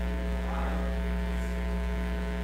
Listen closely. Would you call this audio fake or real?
fake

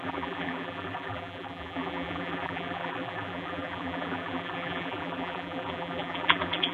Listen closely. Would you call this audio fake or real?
fake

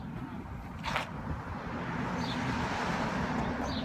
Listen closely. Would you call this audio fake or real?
fake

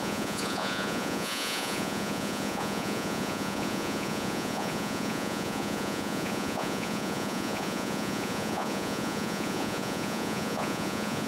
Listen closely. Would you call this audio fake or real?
fake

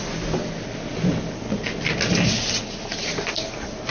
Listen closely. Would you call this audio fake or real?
real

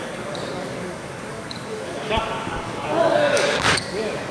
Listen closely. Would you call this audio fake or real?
fake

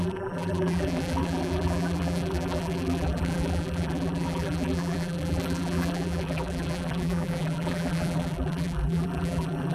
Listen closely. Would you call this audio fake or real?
fake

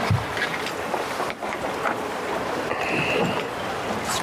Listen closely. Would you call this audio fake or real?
real